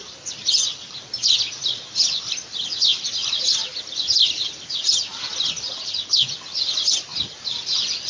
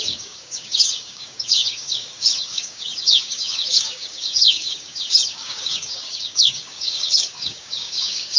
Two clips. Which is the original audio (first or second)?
first